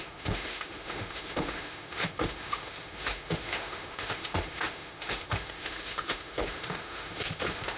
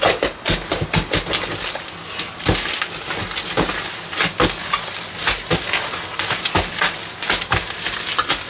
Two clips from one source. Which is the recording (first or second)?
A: second